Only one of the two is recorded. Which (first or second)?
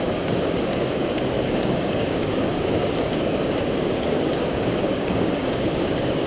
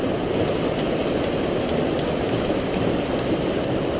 second